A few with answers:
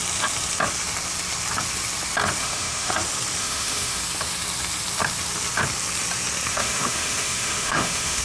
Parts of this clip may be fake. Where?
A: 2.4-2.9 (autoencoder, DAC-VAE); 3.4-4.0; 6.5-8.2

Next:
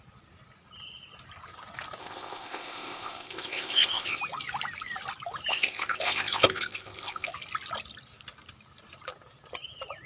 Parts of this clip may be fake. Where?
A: 2.0-4.2 (codec, ZipCodec); 5.5-7.3